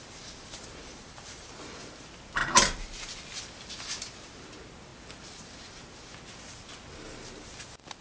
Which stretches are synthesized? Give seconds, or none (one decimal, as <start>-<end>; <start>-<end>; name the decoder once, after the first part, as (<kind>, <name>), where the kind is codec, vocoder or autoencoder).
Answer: 0.8-1.5 (vocoder, BigVGAN v2)